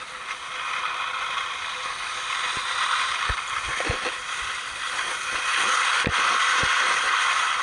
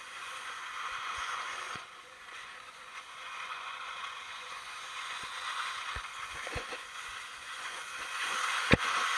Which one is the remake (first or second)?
second